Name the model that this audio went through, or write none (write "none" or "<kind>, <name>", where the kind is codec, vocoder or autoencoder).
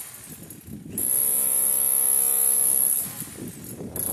none